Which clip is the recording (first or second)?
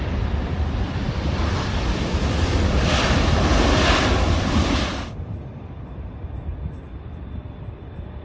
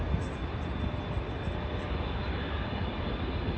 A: second